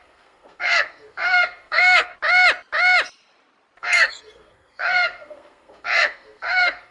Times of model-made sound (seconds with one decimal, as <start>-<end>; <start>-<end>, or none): 0.0-2.1; 3.8-6.9